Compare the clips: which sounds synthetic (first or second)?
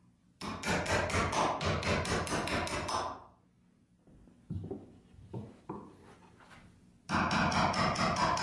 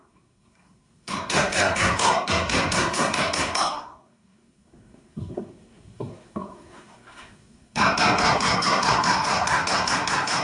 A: second